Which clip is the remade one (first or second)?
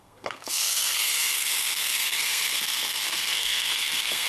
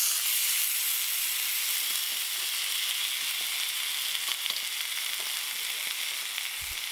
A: first